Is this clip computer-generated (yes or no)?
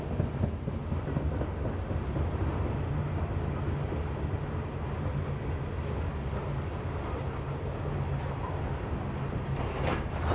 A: no